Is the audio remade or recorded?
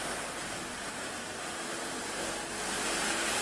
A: recorded